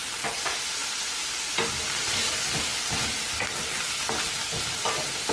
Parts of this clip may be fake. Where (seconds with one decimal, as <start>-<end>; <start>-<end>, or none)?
none